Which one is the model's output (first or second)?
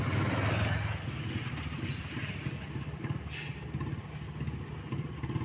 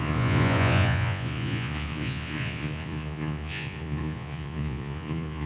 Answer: second